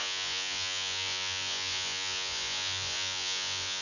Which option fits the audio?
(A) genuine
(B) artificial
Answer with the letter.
B